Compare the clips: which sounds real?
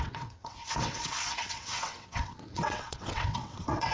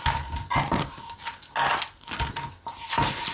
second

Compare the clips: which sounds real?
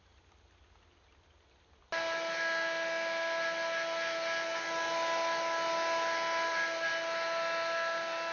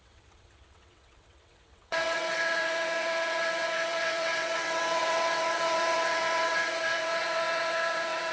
first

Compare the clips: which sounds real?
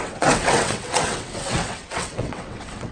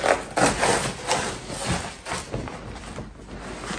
second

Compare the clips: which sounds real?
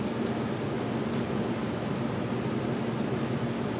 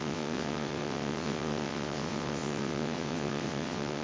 first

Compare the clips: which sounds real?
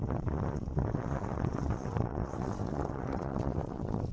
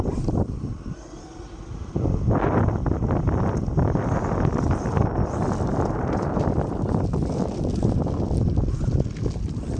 second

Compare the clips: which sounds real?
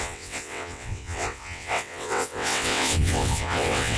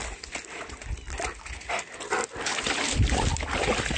second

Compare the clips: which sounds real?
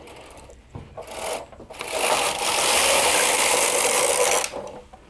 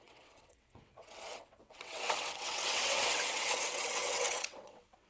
first